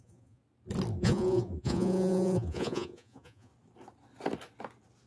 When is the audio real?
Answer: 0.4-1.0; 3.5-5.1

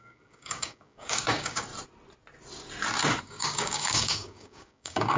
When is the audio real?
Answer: 1.7-3.2